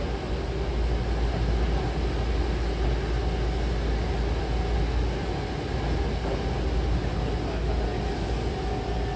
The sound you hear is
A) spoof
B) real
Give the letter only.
B